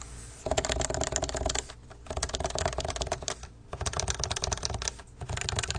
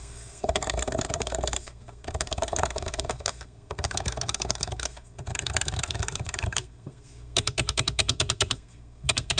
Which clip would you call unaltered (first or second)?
first